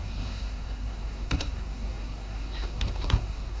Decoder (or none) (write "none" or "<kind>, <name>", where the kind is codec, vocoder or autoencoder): codec, SNAC